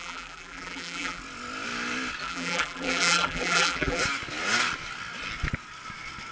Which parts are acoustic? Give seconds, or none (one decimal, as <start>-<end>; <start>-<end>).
1.2-2.2; 4.0-6.3